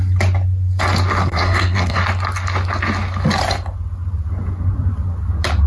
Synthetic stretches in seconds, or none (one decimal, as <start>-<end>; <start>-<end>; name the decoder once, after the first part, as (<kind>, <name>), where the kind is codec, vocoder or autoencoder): 1.2-2.0 (codec, SNAC)